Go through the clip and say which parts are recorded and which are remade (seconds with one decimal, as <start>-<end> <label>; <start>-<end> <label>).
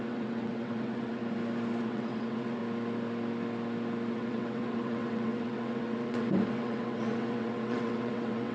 0.0-1.2 remade; 1.2-1.8 recorded; 1.8-2.6 remade; 2.6-4.1 recorded; 4.1-8.5 remade